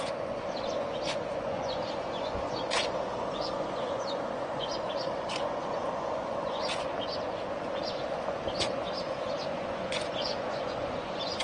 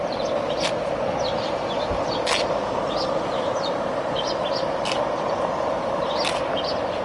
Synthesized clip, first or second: first